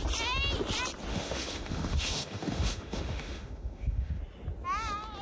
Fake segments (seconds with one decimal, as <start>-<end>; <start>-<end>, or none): 1.1-4.2